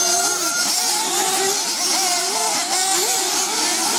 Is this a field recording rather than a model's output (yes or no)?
yes